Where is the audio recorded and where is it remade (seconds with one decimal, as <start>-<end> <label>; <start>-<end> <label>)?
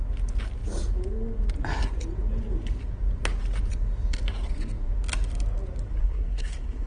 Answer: 0.0-6.0 recorded; 6.0-6.9 remade